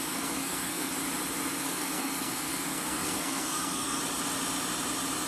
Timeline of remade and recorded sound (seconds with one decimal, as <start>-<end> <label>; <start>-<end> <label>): 0.0-0.9 remade; 0.9-1.6 recorded; 1.6-4.0 remade; 4.0-5.3 recorded